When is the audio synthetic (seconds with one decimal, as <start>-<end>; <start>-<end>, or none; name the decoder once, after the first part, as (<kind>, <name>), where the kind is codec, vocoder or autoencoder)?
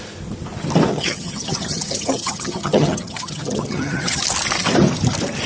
0.9-4.2 (vocoder, HiFi-GAN)